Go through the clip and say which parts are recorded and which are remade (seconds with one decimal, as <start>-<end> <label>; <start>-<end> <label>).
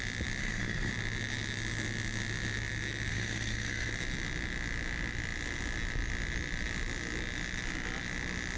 0.0-0.4 recorded; 0.4-0.9 remade; 0.9-3.1 recorded; 3.1-3.9 remade; 3.9-8.6 recorded